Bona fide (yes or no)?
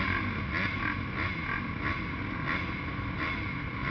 yes